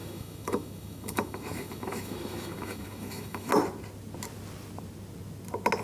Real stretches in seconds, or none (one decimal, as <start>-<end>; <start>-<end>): 3.5-5.8